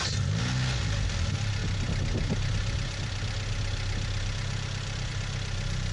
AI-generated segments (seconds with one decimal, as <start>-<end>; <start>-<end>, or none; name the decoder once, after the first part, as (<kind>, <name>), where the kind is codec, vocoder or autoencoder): none